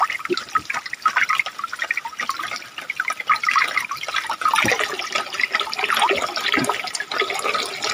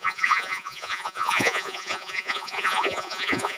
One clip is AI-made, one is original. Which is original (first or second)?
first